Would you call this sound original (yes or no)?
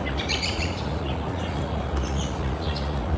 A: no